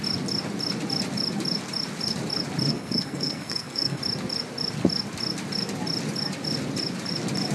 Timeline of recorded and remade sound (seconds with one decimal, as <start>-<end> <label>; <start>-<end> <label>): 0.0-2.7 recorded; 2.7-4.0 remade; 4.0-7.5 recorded